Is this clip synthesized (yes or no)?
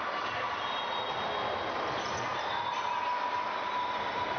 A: no